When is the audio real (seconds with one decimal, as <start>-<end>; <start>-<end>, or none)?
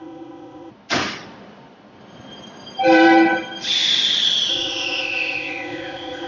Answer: 0.7-4.5